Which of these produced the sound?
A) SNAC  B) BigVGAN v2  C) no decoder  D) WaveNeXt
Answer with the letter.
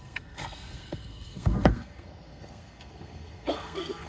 A